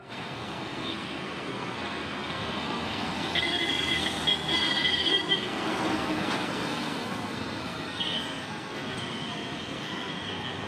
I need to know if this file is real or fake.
fake